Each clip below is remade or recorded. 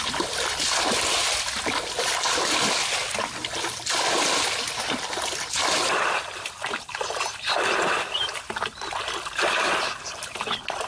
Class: recorded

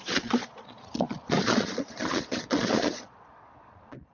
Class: remade